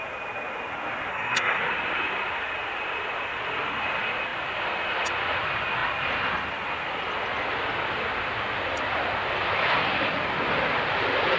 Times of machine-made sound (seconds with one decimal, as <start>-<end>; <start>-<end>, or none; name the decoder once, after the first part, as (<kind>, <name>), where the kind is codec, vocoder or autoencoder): 1.1-1.6 (codec, SNAC)